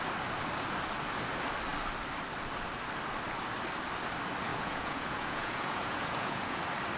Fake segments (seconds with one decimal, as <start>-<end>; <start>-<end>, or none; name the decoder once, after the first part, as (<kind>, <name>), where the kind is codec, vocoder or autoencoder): 4.5-6.6 (vocoder, Vocos)